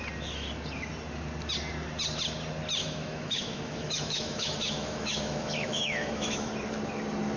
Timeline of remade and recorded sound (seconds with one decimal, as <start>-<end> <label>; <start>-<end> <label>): 0.0-2.8 recorded; 2.8-6.5 remade; 6.5-7.4 recorded